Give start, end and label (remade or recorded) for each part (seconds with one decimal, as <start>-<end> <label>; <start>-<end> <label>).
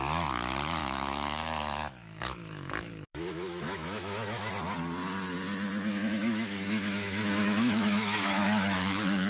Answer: 0.0-0.8 recorded; 0.8-4.5 remade; 4.5-5.9 recorded; 5.9-9.3 remade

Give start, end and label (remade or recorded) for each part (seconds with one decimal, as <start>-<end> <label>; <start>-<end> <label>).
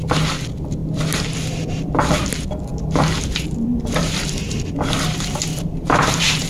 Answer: 0.0-2.7 recorded; 2.7-6.5 remade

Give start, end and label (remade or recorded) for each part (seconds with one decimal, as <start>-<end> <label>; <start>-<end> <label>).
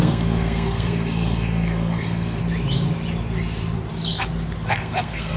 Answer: 0.0-2.4 remade; 2.4-4.7 recorded; 4.7-5.4 remade